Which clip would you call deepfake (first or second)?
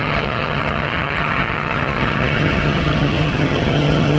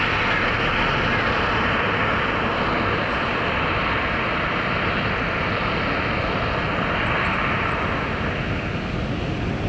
first